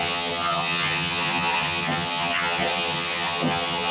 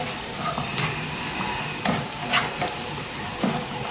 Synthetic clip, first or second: first